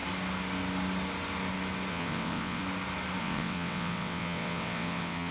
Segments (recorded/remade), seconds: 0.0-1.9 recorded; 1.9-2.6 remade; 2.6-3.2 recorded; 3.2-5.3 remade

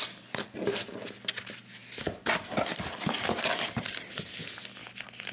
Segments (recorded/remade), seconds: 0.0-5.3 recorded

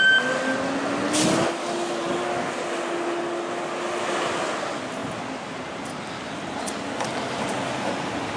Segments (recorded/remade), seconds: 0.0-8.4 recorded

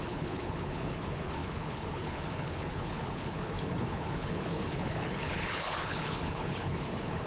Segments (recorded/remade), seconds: 0.0-7.3 remade

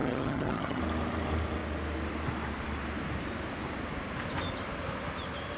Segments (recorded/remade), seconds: 0.0-0.8 remade; 0.8-5.6 recorded

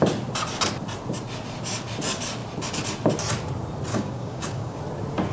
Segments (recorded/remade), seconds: 0.0-3.9 recorded; 3.9-4.8 remade; 4.8-5.3 recorded